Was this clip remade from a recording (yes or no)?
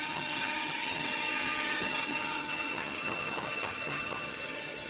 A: yes